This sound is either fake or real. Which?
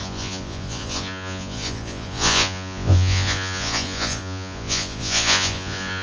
fake